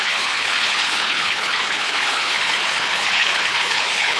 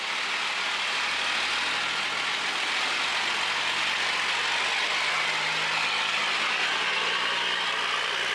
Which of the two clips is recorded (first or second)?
second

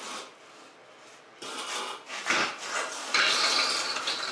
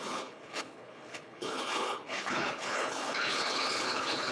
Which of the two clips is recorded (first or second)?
first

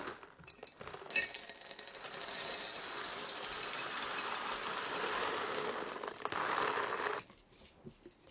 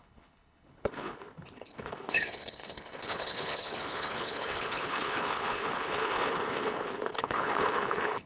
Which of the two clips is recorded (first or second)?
first